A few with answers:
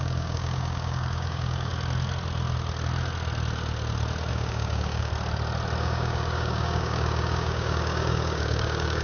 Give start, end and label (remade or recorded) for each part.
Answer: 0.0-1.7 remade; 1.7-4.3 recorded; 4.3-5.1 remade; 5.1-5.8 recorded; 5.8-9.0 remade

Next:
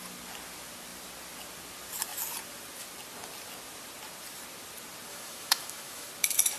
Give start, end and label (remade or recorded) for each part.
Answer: 0.0-5.1 recorded; 5.1-6.1 remade; 6.1-6.6 recorded